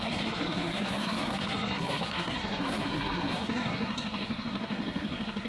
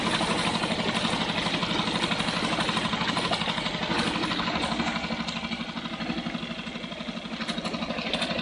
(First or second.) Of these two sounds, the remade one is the first